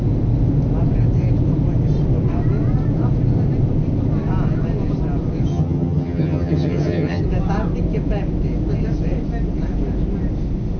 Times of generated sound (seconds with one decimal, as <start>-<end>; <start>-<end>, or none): 5.5-7.2